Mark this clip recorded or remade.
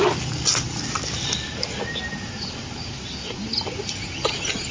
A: recorded